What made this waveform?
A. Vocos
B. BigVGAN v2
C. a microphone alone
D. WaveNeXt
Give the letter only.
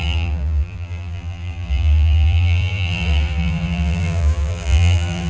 B